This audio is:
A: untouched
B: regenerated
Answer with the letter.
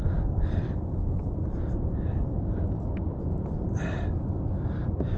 A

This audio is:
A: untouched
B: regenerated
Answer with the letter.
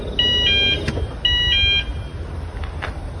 A